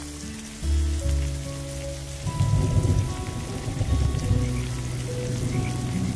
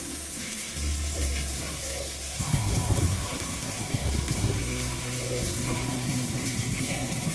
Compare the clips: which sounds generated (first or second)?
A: second